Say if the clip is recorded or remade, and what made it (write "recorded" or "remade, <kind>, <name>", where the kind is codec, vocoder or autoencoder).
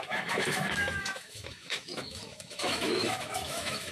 remade, autoencoder, DAC-VAE